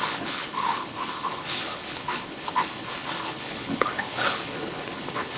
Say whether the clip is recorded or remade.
remade